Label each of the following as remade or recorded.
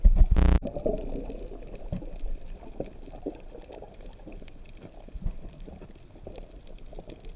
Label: recorded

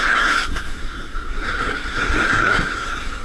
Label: remade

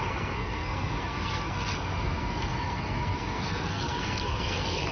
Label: remade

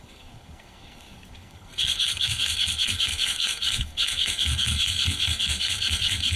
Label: remade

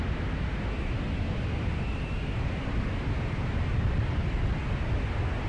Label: recorded